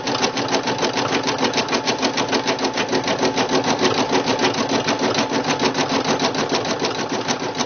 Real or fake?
real